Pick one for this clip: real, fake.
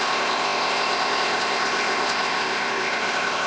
fake